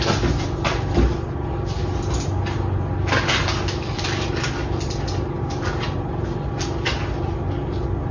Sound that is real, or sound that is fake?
real